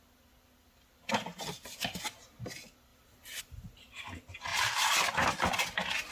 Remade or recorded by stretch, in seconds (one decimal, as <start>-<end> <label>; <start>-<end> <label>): 0.0-6.1 recorded